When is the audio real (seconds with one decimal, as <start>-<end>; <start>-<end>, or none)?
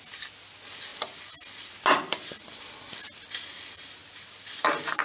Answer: 0.0-5.0